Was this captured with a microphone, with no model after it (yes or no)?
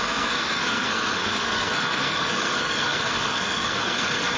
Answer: no